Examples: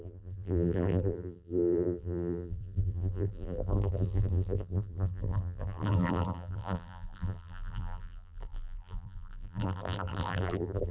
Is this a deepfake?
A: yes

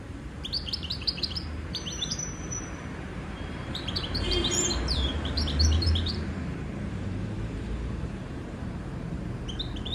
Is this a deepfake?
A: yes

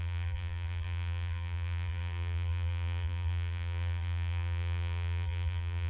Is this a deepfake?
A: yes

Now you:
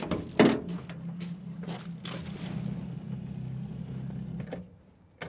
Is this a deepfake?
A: no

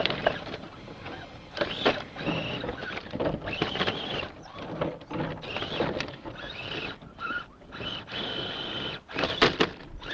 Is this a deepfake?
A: no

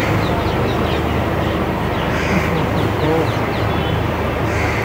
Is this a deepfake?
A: no